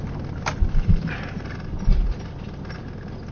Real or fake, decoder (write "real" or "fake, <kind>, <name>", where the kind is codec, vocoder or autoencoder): real